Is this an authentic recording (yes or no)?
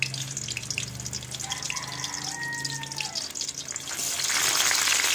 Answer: yes